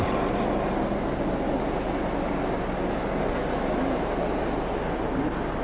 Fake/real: real